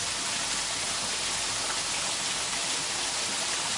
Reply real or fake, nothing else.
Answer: real